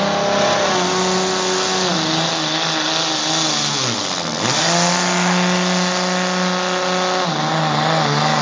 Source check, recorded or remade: recorded